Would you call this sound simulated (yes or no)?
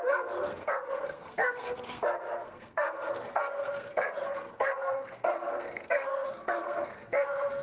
yes